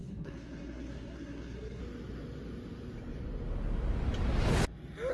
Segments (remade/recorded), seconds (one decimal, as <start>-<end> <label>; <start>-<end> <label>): 0.0-1.8 remade; 1.8-5.1 recorded

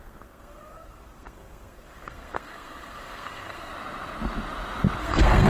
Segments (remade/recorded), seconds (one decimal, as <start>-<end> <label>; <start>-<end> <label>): 0.0-3.7 remade; 3.7-5.0 recorded; 5.0-5.5 remade

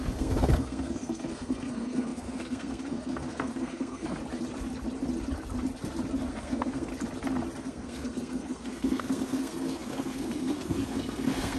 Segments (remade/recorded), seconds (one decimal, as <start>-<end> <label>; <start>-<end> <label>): 0.0-4.2 remade; 4.2-6.3 recorded; 6.3-6.9 remade; 6.9-7.6 recorded; 7.6-11.6 remade

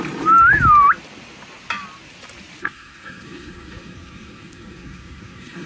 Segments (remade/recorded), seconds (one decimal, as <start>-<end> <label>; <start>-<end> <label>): 0.0-2.6 recorded; 2.6-5.7 remade

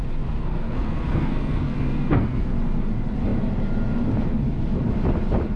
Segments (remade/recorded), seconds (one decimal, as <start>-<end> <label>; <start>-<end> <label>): 0.0-0.4 recorded; 0.4-2.5 remade; 2.5-5.6 recorded